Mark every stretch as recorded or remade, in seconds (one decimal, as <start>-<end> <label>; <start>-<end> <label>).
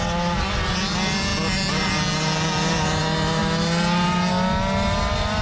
0.0-5.4 recorded